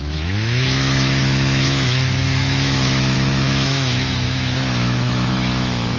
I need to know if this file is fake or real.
fake